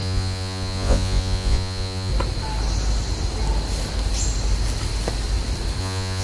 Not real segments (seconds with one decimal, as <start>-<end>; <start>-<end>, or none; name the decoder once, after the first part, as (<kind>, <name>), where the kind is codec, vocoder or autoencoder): 0.0-2.1 (vocoder, Vocos); 5.8-6.2